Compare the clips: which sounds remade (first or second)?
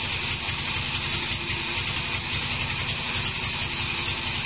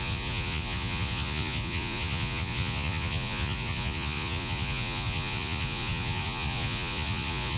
second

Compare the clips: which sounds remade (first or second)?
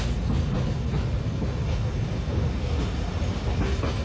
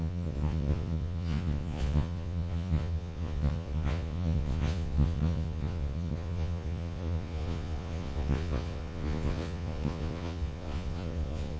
second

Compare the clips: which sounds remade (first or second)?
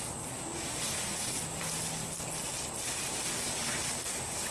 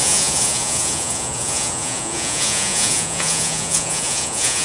second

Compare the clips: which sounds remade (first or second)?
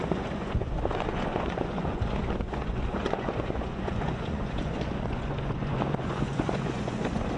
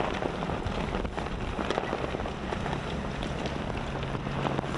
first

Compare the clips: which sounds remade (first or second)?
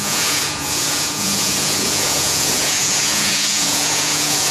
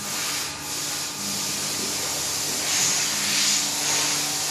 first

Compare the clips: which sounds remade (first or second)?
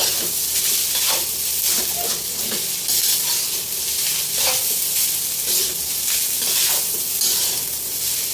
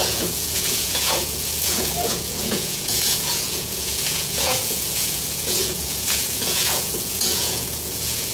second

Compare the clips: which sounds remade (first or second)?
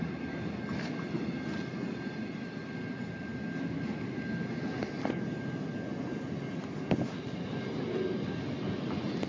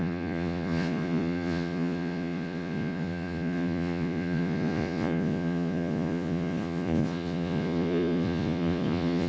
second